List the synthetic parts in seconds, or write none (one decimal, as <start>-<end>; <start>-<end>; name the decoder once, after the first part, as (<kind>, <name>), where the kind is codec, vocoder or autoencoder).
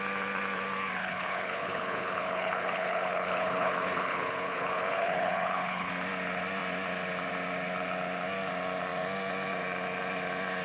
1.0-5.9 (codec, HILCodec)